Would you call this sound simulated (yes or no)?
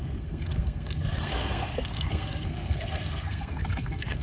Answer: yes